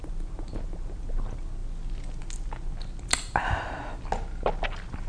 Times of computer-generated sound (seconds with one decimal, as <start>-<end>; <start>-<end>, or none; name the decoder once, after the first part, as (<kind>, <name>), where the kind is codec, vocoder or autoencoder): none